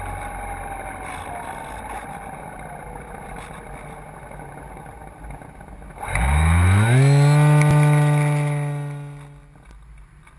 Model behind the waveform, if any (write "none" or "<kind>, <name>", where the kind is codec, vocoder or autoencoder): none